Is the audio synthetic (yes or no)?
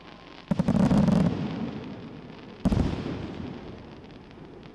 no